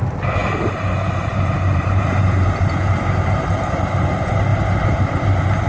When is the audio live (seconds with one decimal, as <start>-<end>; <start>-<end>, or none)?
0.0-0.4; 3.8-5.7